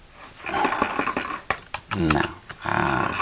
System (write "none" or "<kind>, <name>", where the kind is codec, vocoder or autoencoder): vocoder, BigVGAN v2